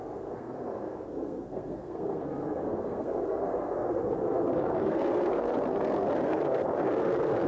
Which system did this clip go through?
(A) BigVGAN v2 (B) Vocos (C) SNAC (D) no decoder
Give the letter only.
C